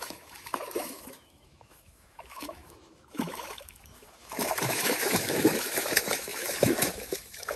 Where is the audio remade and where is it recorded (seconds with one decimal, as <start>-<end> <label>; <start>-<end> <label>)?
0.0-7.6 remade